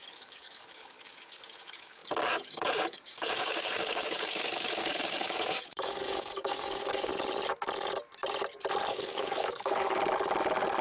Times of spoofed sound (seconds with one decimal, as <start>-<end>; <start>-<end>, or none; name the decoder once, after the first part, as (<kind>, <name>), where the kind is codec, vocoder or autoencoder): 0.0-7.1 (codec, DAC); 8.9-10.0